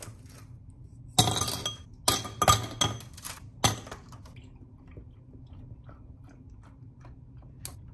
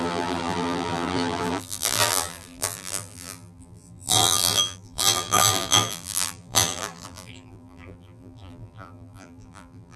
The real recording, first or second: first